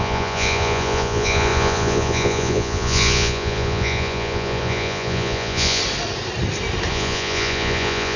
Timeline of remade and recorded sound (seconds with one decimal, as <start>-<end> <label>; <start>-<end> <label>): 0.0-5.8 remade; 5.8-6.9 recorded; 6.9-8.2 remade